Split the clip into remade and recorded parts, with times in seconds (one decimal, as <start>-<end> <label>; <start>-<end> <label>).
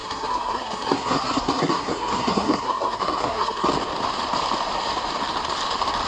0.0-3.7 remade; 3.7-6.1 recorded